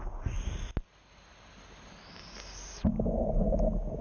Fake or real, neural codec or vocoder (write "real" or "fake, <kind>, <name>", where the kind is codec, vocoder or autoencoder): real